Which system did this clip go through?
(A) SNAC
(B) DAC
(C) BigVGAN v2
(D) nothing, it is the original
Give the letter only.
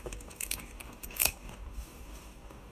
B